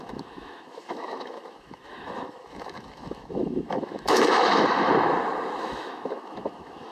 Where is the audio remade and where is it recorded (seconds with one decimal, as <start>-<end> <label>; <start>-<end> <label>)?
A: 0.0-4.9 remade; 4.9-5.6 recorded; 5.6-6.9 remade